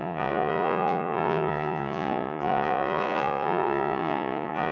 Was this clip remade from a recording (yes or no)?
yes